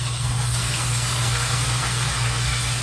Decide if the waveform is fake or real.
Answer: fake